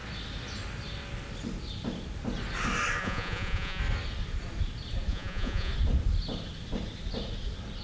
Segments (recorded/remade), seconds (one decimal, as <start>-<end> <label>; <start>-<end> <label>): 0.0-3.0 recorded; 3.0-3.8 remade; 3.8-5.1 recorded; 5.1-5.7 remade; 5.7-7.8 recorded